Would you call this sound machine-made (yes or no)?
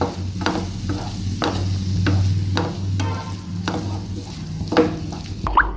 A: no